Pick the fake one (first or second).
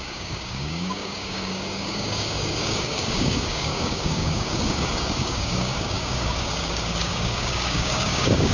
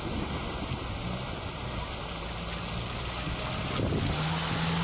first